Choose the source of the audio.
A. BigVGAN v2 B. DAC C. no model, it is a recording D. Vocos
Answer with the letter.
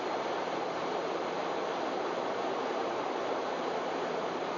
A